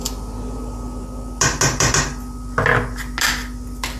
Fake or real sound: real